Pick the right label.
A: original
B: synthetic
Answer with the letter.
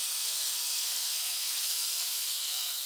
B